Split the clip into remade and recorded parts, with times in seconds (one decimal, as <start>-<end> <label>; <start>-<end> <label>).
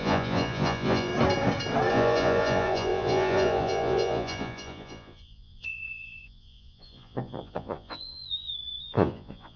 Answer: 0.0-1.1 remade; 1.1-1.9 recorded; 1.9-9.6 remade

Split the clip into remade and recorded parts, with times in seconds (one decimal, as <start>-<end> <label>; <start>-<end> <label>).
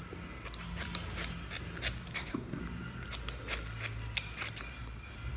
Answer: 0.0-2.1 recorded; 2.1-2.6 remade; 2.6-5.4 recorded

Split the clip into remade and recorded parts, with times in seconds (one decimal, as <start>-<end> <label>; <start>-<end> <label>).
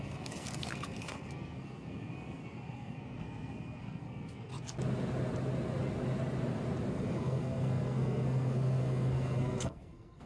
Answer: 0.0-4.5 remade; 4.5-6.9 recorded; 6.9-10.3 remade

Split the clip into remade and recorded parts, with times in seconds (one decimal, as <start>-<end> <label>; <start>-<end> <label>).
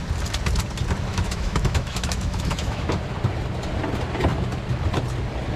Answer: 0.0-1.1 recorded; 1.1-3.0 remade; 3.0-5.6 recorded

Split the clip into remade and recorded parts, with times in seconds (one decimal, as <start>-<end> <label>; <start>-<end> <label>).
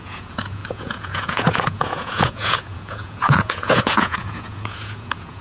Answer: 0.0-5.4 remade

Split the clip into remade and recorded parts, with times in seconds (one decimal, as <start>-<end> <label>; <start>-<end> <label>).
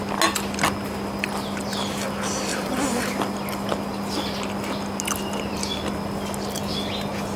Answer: 0.0-2.5 recorded; 2.5-3.0 remade; 3.0-7.4 recorded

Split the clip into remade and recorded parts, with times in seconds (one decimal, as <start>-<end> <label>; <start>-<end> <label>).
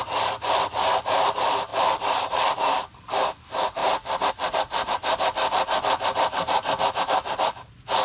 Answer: 0.0-8.0 recorded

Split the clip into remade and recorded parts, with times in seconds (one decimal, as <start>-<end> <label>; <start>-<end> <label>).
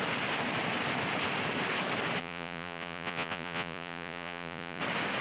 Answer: 0.0-2.2 recorded; 2.2-4.8 remade; 4.8-5.2 recorded